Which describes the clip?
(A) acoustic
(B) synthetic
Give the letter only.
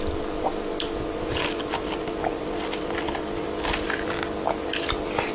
A